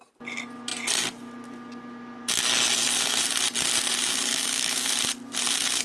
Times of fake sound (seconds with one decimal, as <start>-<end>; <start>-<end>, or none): 4.3-4.9